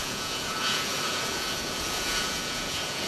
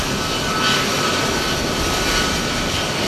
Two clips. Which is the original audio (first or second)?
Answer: second